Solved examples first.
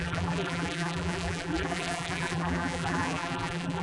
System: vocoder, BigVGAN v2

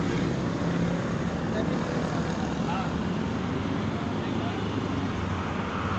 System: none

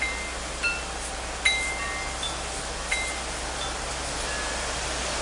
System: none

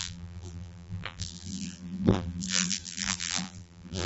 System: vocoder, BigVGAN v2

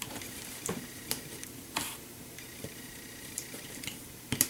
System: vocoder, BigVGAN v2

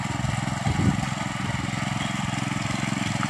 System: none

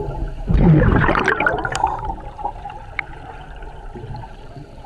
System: vocoder, BigVGAN v2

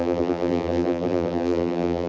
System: vocoder, BigVGAN v2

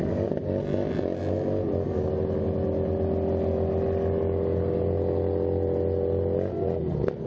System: none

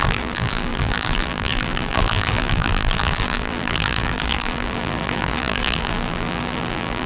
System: vocoder, BigVGAN v2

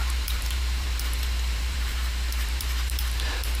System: vocoder, BigVGAN v2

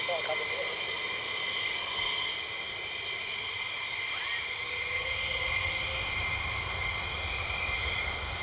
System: none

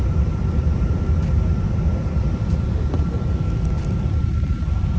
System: vocoder, BigVGAN v2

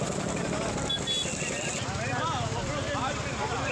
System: none